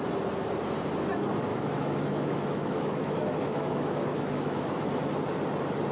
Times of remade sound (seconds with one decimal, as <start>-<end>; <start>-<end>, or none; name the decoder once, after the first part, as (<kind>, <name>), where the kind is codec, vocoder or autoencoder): 1.5-4.9 (autoencoder, DAC-VAE)